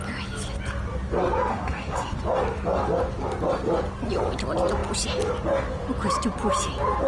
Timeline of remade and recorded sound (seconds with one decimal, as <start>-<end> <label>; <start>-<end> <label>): 0.0-1.5 recorded; 1.5-2.2 remade; 2.2-7.1 recorded